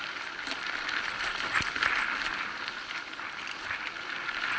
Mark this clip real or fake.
fake